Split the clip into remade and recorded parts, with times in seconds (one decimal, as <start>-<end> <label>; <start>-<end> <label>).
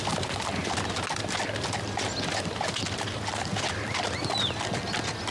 0.0-5.3 recorded